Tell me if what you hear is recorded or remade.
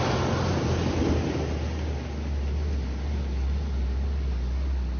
recorded